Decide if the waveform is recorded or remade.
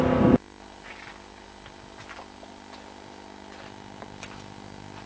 recorded